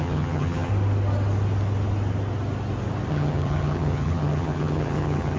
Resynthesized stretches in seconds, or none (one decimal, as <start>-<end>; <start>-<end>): 0.0-0.7; 3.1-5.4